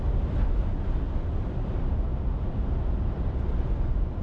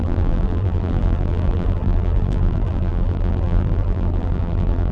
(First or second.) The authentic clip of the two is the first